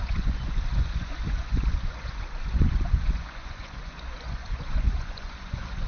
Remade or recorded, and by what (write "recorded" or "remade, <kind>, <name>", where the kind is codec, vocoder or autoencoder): remade, vocoder, Vocos